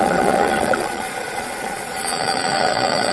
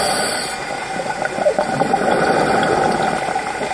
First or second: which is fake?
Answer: first